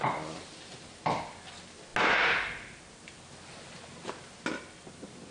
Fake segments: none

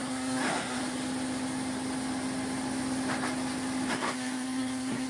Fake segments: 0.0-0.8 (codec, SNAC); 3.9-5.1